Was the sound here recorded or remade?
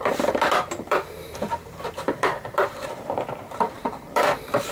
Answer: remade